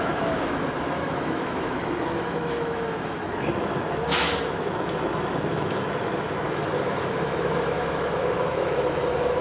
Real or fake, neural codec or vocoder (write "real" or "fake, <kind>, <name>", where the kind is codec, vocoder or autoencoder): fake, autoencoder, DAC-VAE